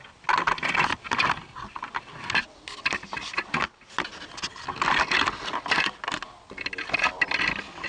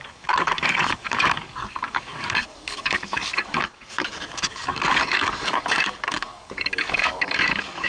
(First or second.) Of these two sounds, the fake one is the second